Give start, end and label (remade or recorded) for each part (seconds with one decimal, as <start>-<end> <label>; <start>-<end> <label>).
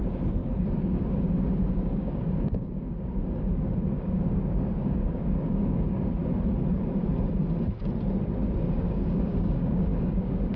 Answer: 0.0-6.2 remade; 6.2-8.7 recorded; 8.7-10.6 remade